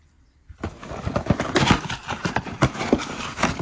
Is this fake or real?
real